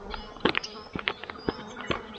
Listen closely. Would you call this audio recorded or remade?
recorded